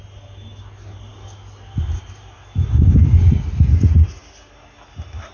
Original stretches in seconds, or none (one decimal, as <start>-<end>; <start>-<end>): 0.0-5.3